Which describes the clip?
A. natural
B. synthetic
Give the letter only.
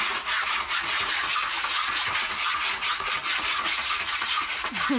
B